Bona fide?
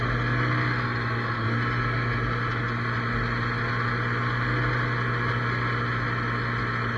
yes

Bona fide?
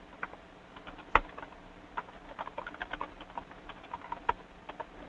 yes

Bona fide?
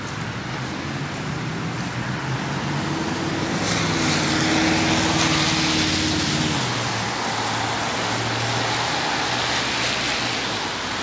yes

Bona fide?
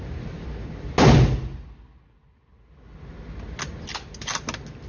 yes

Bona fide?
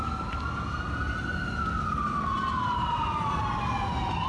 yes